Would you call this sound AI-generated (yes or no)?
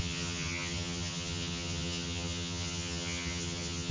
yes